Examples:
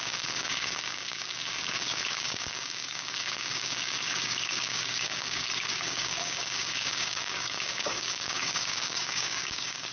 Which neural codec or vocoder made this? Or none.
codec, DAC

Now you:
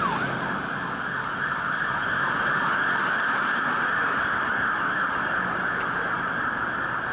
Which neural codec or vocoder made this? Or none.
none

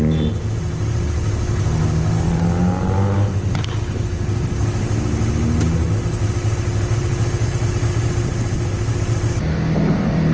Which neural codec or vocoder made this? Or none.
none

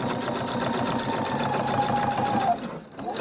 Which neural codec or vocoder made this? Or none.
none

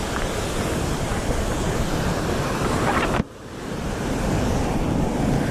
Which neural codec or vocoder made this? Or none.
none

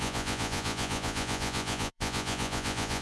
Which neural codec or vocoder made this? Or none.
vocoder, Vocos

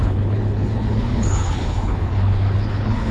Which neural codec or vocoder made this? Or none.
codec, HILCodec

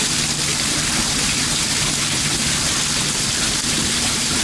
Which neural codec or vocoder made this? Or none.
none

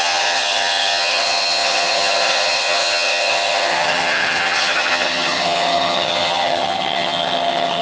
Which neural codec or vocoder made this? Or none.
vocoder, HiFi-GAN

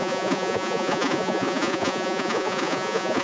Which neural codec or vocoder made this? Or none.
vocoder, Vocos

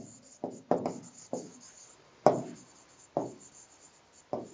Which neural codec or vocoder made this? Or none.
none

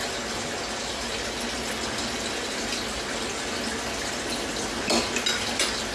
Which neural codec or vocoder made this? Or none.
none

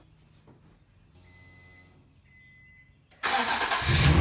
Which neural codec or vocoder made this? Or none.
none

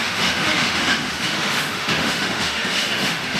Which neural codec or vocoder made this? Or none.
autoencoder, DAC-VAE